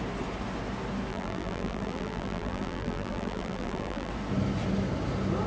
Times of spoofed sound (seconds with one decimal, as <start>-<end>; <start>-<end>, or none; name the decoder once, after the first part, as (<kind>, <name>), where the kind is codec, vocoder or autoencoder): 1.1-4.1 (vocoder, BigVGAN v2)